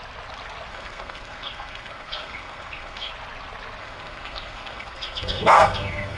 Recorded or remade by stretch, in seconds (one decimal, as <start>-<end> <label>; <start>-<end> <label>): 0.0-0.7 recorded; 0.7-3.1 remade; 3.1-3.8 recorded; 3.8-6.2 remade